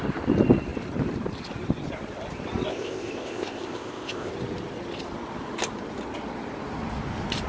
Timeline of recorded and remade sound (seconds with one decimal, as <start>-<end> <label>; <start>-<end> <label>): 0.0-2.7 recorded; 2.7-4.3 remade; 4.3-7.5 recorded